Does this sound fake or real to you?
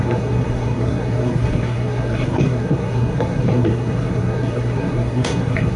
fake